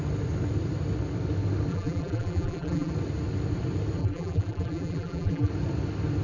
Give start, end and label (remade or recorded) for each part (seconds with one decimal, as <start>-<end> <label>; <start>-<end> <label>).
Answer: 0.0-1.7 recorded; 1.7-2.9 remade; 2.9-4.0 recorded; 4.0-5.5 remade; 5.5-6.2 recorded